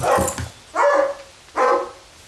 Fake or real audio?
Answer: real